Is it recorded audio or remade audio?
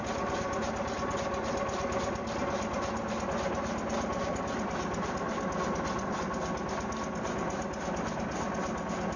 recorded